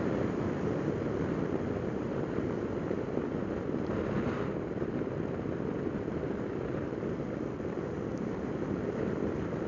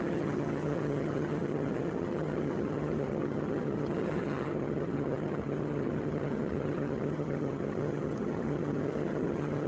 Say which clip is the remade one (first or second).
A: second